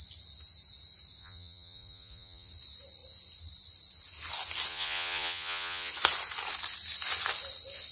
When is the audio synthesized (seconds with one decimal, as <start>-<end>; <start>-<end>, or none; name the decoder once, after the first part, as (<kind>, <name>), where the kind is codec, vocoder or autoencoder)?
1.2-2.5 (vocoder, Vocos); 4.7-5.9